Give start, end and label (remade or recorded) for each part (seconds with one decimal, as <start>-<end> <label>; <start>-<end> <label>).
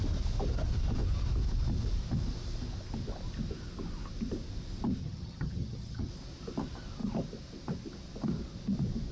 0.0-5.0 recorded; 5.0-6.1 remade; 6.1-9.1 recorded